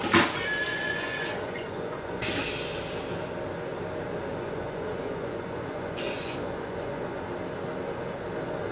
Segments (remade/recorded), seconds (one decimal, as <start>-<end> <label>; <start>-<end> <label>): 0.0-0.7 recorded; 0.7-2.3 remade; 2.3-4.3 recorded; 4.3-7.3 remade; 7.3-8.7 recorded